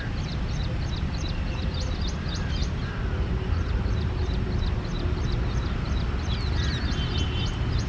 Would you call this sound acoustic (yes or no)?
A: yes